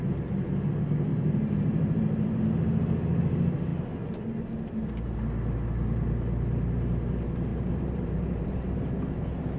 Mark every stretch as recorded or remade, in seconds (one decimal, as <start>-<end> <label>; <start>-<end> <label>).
0.0-1.1 recorded; 1.1-2.4 remade; 2.4-7.5 recorded; 7.5-8.8 remade; 8.8-9.6 recorded